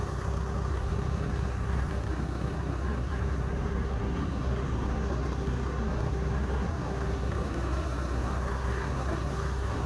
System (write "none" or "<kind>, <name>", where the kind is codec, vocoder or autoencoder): codec, SNAC